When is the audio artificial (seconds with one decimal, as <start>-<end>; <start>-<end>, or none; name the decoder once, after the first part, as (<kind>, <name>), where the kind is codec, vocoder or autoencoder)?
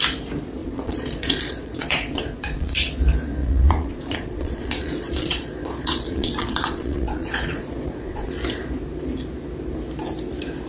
0.6-2.9 (vocoder, Vocos); 3.4-8.3